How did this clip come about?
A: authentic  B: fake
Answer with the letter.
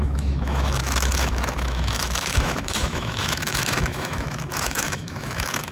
B